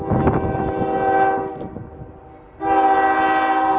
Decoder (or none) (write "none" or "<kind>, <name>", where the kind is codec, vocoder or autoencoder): none